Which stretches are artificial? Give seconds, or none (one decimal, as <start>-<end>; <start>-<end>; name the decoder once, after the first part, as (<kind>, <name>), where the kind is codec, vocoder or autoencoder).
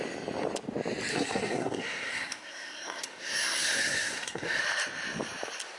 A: 1.1-4.6 (codec, SNAC)